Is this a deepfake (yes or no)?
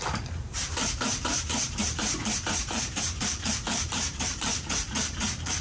yes